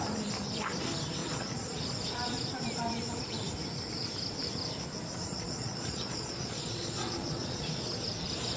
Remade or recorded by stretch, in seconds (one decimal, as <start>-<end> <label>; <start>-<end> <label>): 0.0-1.2 recorded; 1.2-1.8 remade; 1.8-5.3 recorded; 5.3-7.8 remade; 7.8-8.6 recorded